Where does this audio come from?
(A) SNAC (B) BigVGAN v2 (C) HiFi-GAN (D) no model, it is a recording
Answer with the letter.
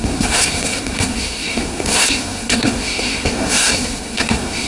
A